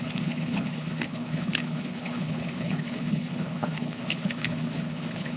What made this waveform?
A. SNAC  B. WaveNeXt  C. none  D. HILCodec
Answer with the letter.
D